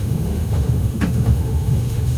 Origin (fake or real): fake